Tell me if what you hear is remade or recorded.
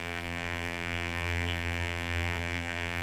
remade